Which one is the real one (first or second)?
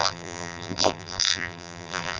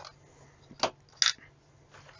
second